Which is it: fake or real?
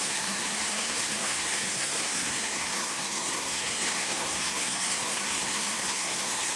fake